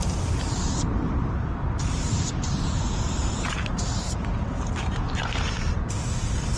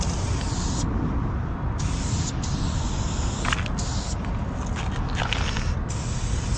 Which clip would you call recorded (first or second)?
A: second